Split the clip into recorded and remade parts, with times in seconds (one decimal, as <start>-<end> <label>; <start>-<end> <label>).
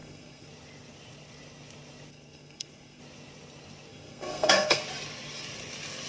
0.0-0.5 remade; 0.5-2.1 recorded; 2.1-3.0 remade; 3.0-3.9 recorded; 3.9-4.8 remade; 4.8-6.1 recorded